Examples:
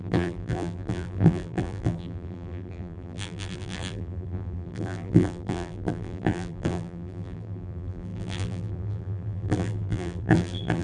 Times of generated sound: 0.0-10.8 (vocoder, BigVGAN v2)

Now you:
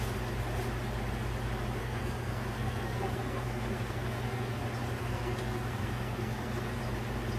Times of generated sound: 1.8-4.6 (codec, SNAC); 5.0-6.8

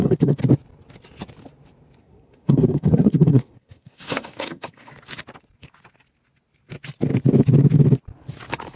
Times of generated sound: 0.0-0.4 (codec, SNAC); 2.0-4.9

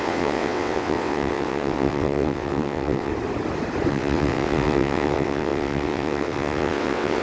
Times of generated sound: 0.0-3.1 (vocoder, WaveNeXt); 3.9-7.2

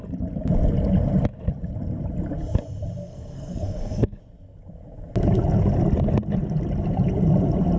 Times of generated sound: 3.0-4.2 (codec, SNAC)

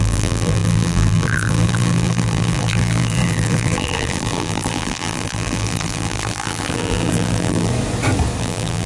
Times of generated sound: 0.0-7.7 (vocoder, BigVGAN v2); 8.4-8.9

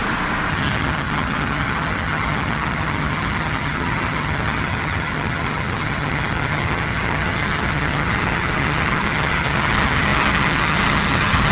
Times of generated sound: 0.5-11.5 (vocoder, HiFi-GAN)

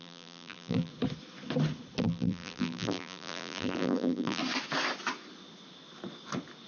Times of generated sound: 0.0-0.9 (vocoder, BigVGAN v2); 2.0-4.4